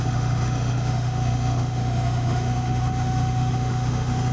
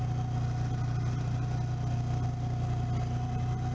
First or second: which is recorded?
second